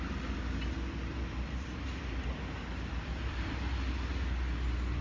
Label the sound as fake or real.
real